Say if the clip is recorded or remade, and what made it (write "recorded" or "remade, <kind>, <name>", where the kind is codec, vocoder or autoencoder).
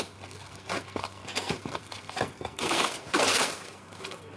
remade, codec, SNAC